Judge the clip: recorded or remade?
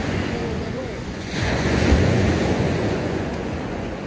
remade